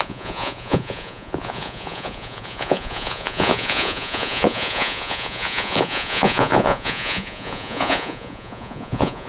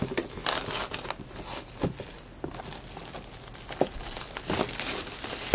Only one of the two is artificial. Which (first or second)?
first